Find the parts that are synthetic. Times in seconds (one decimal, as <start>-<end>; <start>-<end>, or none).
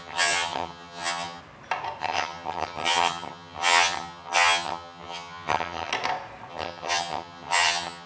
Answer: 0.0-1.4; 2.0-5.9; 6.5-8.1